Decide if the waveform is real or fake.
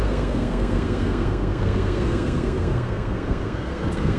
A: fake